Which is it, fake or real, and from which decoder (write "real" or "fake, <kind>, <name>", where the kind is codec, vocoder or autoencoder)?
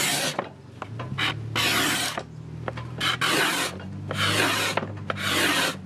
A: real